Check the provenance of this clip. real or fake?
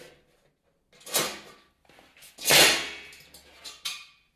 real